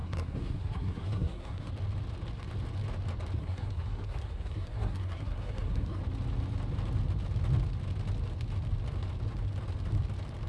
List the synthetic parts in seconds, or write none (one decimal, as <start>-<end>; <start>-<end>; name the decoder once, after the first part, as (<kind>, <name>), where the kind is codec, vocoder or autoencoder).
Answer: 0.0-1.7 (codec, SNAC); 3.4-6.0